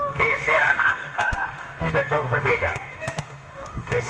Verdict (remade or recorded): remade